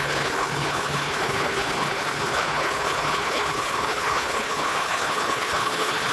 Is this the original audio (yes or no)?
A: no